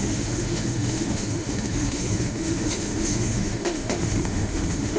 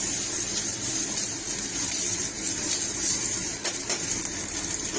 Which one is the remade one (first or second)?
first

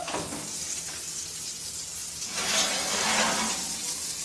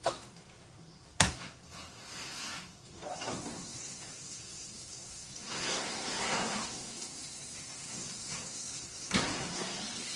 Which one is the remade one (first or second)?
second